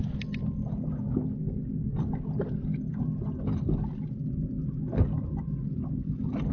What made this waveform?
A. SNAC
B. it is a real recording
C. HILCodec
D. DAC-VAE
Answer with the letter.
B